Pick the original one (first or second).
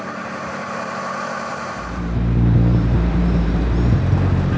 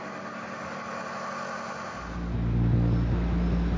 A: second